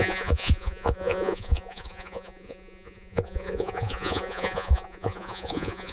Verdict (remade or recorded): remade